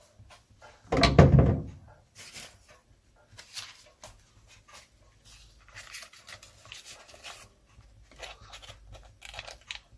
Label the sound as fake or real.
real